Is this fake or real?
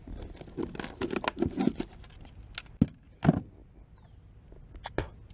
real